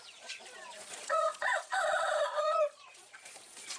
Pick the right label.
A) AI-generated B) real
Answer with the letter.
A